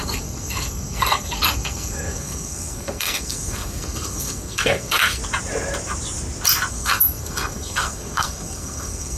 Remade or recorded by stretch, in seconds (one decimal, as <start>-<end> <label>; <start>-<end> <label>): 0.0-5.2 remade; 5.2-6.7 recorded; 6.7-9.2 remade